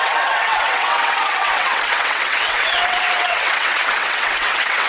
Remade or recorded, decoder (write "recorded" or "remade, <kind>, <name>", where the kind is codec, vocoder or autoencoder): remade, vocoder, WaveNeXt